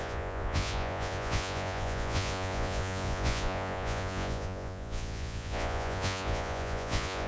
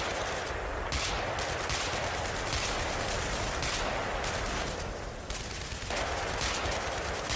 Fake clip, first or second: first